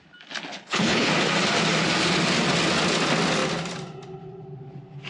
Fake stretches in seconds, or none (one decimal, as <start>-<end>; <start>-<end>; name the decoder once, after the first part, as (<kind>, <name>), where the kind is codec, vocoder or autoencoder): 0.5-1.1 (codec, HILCodec)